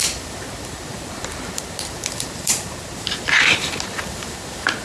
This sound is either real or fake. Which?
fake